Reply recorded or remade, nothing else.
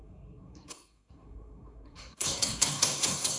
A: remade